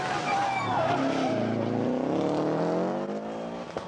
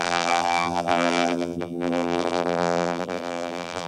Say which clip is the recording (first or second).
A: first